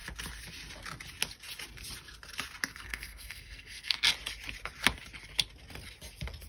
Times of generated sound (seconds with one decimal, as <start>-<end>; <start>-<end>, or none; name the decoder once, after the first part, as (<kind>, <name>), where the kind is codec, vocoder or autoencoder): 2.7-4.1 (codec, SNAC)